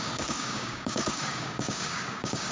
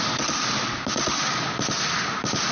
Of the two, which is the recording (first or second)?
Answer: second